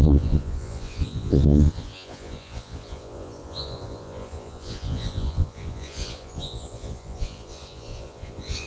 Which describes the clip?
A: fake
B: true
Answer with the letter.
A